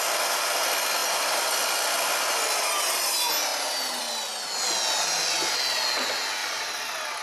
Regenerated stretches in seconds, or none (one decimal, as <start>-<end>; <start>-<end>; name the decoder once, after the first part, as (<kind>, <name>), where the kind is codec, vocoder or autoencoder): none